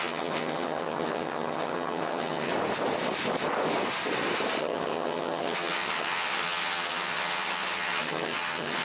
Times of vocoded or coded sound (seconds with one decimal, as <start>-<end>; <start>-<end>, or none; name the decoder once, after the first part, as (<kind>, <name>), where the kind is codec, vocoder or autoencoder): 0.0-2.5 (vocoder, HiFi-GAN); 4.6-8.8